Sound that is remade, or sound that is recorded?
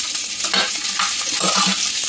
recorded